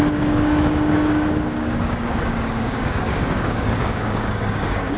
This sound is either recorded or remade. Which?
remade